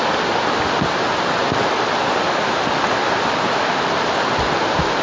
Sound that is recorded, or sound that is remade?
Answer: recorded